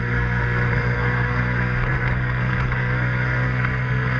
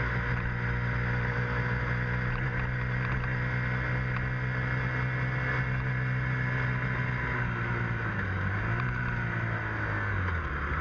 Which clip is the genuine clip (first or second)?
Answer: second